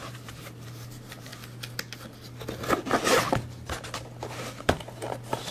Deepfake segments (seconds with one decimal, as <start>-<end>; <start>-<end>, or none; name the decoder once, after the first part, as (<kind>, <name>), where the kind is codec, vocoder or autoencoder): 0.0-1.3 (vocoder, BigVGAN v2); 4.6-5.5